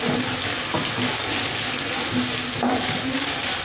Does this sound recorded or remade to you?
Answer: recorded